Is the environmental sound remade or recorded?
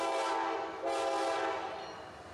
recorded